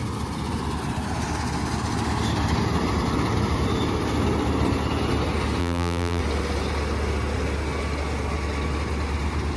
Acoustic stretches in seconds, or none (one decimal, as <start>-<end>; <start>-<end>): 0.0-5.6; 6.2-9.6